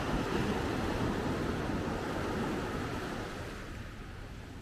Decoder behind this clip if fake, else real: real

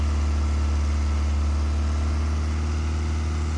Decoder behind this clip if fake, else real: real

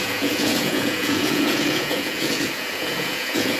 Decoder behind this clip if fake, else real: fake, vocoder, Vocos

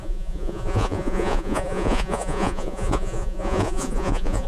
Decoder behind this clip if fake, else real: fake, vocoder, Vocos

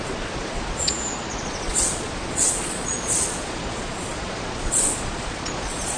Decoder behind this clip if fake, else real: fake, vocoder, Vocos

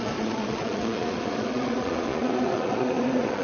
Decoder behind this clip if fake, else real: fake, vocoder, Vocos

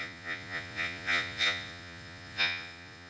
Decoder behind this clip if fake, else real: fake, vocoder, Vocos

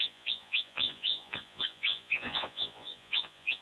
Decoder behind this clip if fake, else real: fake, vocoder, Vocos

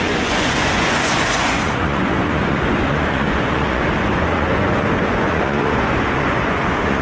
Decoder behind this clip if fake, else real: fake, vocoder, Vocos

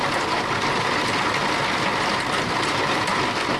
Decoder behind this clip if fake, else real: real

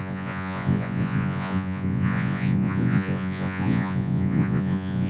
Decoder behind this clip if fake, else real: fake, vocoder, Vocos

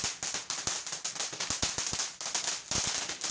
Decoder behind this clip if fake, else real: real